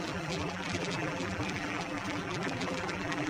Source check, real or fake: fake